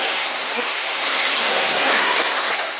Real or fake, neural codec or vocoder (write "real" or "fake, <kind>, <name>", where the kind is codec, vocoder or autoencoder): fake, codec, SNAC